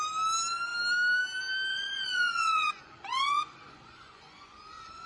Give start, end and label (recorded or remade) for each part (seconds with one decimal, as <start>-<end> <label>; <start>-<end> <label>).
0.0-1.7 recorded; 1.7-5.1 remade